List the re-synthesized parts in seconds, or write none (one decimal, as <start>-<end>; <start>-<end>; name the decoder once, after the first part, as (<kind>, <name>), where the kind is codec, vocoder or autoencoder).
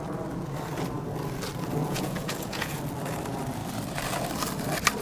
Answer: 1.8-2.8 (vocoder, Vocos)